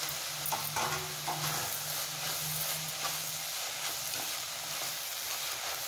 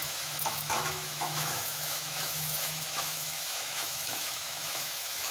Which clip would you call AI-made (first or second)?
second